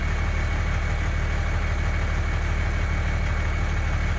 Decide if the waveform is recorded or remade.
recorded